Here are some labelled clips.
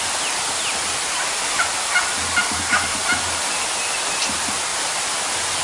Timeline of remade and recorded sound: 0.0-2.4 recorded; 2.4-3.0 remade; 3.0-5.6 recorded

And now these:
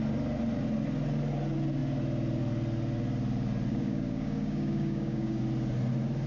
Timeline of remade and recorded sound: 0.0-3.7 recorded; 3.7-5.4 remade; 5.4-6.3 recorded